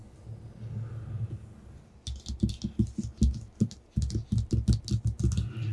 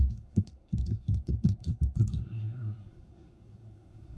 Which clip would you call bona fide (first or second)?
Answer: first